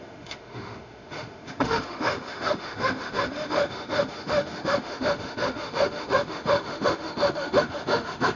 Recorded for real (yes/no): no